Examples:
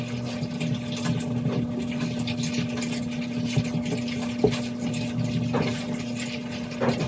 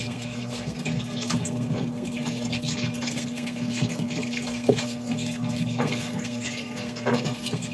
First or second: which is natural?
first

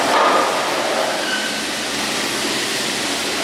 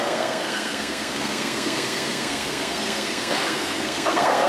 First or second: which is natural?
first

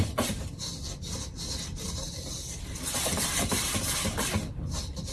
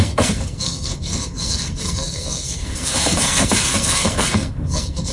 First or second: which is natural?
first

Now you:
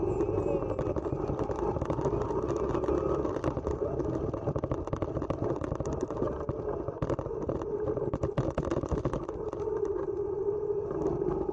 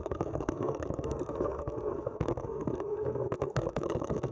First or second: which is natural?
first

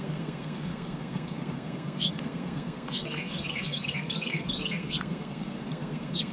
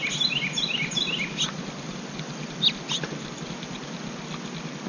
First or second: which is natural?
second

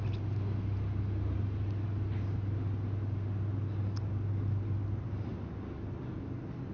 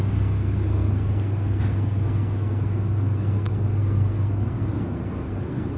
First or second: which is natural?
first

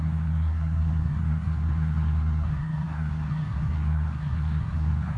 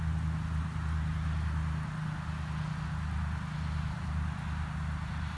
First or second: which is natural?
second